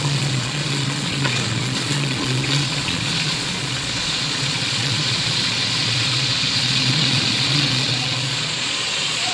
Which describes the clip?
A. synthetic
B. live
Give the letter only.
A